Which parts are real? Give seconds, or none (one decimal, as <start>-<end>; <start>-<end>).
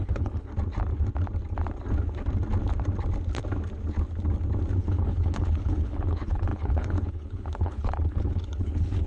0.5-4.8